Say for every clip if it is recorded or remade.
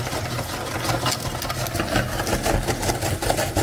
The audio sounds recorded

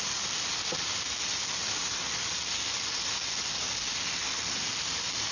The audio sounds recorded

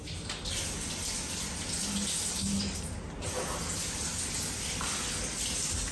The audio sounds recorded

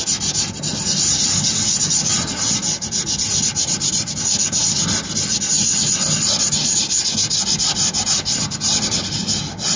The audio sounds recorded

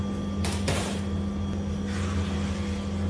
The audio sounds recorded